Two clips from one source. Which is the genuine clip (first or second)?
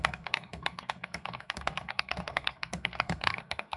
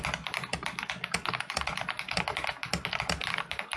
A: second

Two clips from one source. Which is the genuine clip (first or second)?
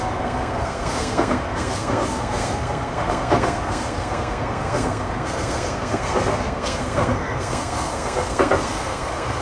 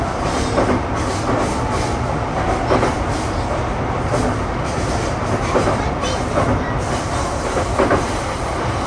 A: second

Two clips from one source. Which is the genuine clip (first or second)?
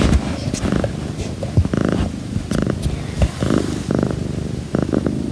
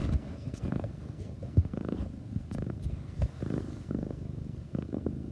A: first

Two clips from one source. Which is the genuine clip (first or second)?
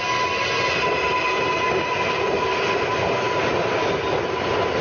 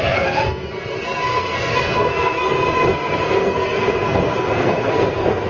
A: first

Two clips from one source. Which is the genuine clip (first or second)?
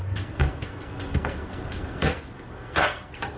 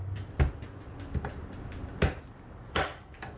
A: second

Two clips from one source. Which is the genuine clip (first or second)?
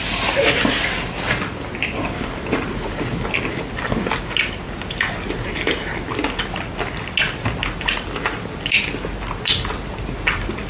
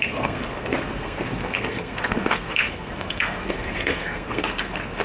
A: first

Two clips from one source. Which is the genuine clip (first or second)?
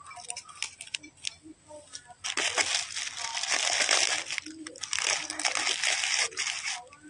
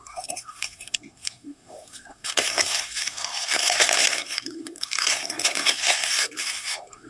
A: first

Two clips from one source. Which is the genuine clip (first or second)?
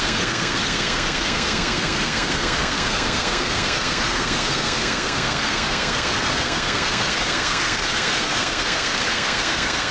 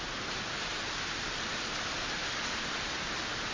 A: second